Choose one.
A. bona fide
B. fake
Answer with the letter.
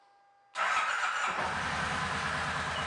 A